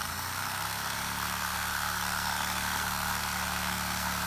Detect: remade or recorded remade